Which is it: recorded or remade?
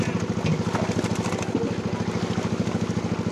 recorded